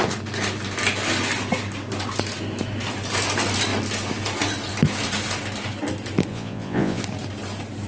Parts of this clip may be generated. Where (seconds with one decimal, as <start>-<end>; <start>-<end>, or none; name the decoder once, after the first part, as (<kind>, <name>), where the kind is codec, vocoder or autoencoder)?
6.3-7.0 (vocoder, Vocos)